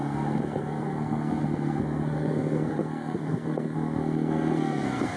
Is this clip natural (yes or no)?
no